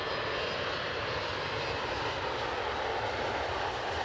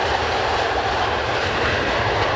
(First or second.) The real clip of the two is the first